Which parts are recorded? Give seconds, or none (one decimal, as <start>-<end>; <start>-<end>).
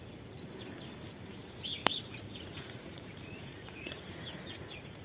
0.0-1.9